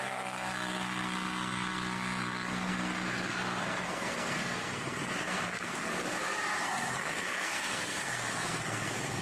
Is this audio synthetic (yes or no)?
yes